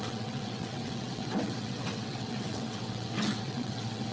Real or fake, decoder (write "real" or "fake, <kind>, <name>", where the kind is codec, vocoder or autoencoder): fake, vocoder, WaveNeXt